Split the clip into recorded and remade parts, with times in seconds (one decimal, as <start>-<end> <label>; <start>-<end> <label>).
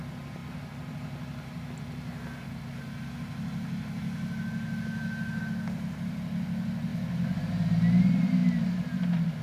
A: 0.0-9.4 recorded